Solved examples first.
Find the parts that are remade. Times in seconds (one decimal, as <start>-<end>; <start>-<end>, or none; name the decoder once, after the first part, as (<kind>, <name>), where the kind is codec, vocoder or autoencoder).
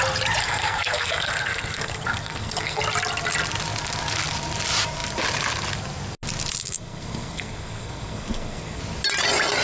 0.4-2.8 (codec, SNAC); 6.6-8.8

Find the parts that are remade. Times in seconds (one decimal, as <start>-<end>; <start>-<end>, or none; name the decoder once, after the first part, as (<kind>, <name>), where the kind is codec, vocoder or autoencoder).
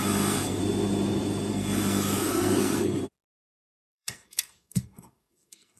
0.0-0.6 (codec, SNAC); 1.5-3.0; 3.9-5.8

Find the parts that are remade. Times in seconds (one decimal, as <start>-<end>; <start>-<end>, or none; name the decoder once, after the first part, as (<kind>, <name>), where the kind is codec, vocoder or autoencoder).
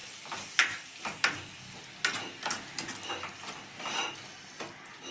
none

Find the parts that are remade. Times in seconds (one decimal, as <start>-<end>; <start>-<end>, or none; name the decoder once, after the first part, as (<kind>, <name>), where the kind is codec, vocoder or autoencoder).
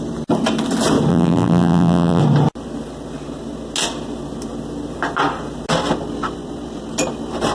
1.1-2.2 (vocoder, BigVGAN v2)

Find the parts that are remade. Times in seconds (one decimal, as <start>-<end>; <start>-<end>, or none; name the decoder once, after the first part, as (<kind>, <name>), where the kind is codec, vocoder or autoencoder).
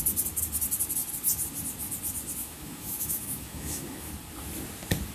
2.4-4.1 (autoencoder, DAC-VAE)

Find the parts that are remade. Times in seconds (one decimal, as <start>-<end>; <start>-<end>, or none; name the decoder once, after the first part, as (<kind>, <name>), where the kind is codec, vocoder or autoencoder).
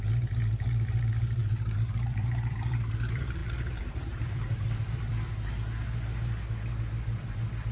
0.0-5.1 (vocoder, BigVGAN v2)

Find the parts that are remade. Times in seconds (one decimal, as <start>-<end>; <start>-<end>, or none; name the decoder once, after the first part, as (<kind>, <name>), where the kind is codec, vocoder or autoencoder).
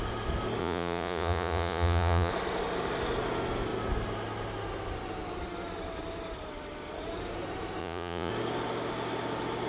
0.6-2.3 (vocoder, Vocos); 7.8-8.3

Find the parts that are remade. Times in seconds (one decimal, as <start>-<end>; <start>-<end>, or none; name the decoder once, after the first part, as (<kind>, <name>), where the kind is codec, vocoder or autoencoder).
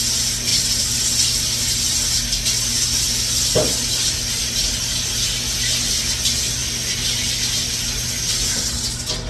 0.5-1.0 (vocoder, BigVGAN v2); 4.4-5.1